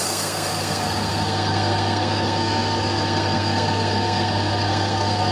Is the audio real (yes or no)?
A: no